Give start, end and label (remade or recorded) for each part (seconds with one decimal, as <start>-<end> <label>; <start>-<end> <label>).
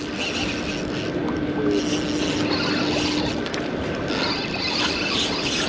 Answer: 0.0-5.7 recorded